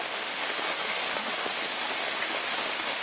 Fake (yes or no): yes